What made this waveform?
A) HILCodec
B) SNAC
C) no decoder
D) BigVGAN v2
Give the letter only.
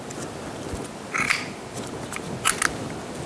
C